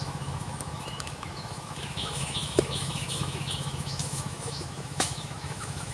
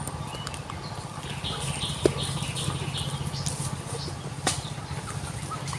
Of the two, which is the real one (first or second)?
second